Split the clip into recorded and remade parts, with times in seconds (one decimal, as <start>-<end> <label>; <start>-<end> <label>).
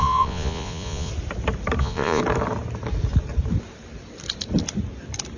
0.0-1.1 remade; 1.1-1.8 recorded; 1.8-2.2 remade; 2.2-5.4 recorded